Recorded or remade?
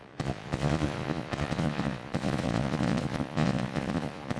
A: remade